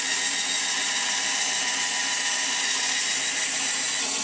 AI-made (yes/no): no